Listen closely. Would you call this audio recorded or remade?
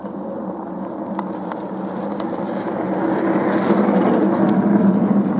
recorded